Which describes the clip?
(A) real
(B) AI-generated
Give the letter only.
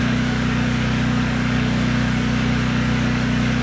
B